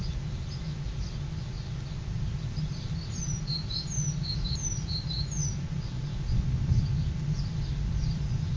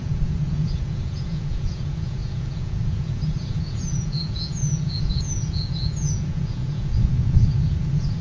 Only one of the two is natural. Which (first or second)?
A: first